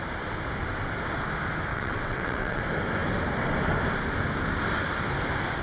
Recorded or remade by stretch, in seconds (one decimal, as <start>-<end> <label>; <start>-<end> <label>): 0.0-1.7 recorded; 1.7-2.6 remade; 2.6-5.6 recorded